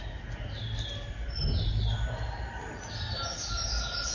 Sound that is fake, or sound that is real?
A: real